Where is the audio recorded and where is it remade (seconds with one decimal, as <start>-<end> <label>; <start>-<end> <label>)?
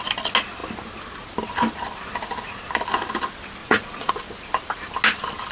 0.0-3.6 recorded; 3.6-4.1 remade; 4.1-5.5 recorded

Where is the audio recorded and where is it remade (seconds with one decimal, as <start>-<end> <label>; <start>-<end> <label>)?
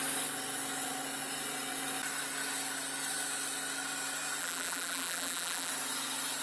0.0-4.4 recorded; 4.4-5.7 remade; 5.7-6.4 recorded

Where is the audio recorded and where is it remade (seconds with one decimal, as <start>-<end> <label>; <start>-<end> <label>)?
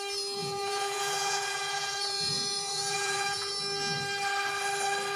0.0-0.4 recorded; 0.4-3.5 remade; 3.5-5.2 recorded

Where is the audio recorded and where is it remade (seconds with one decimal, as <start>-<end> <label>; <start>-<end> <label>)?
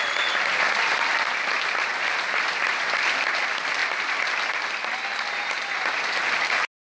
0.0-7.0 recorded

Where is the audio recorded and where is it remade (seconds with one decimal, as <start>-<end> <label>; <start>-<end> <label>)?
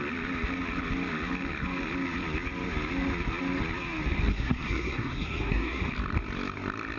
0.0-4.3 recorded; 4.3-5.9 remade; 5.9-7.0 recorded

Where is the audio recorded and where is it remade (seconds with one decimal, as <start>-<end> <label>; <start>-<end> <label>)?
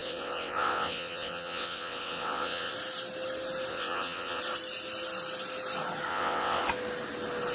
0.0-2.7 remade; 2.7-3.7 recorded; 3.7-4.4 remade; 4.4-6.1 recorded; 6.1-6.6 remade; 6.6-7.5 recorded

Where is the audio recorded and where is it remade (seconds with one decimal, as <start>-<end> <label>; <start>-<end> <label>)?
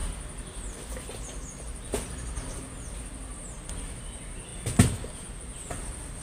0.0-6.2 recorded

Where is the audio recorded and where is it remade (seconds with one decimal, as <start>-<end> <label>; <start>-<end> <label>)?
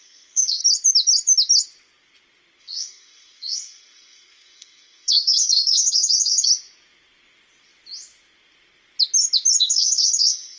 0.0-0.6 remade; 0.6-2.6 recorded; 2.6-6.5 remade; 6.5-9.6 recorded; 9.6-10.6 remade